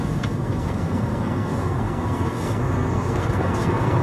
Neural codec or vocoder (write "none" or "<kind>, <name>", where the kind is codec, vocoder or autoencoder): codec, SNAC